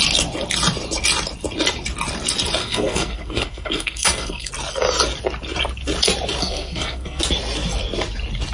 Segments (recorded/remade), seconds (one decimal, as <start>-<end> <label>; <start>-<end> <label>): 0.0-2.6 recorded; 2.6-4.5 remade; 4.5-6.4 recorded; 6.4-7.2 remade; 7.2-8.5 recorded